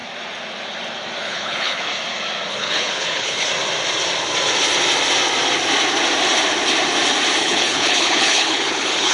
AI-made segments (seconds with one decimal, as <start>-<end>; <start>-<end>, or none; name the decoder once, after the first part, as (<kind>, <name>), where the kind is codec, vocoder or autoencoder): 1.2-1.9 (codec, HILCodec); 2.5-3.5; 7.4-9.1